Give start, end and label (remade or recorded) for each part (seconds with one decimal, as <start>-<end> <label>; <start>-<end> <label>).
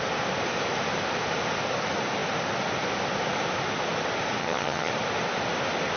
0.0-4.4 recorded; 4.4-4.9 remade; 4.9-6.0 recorded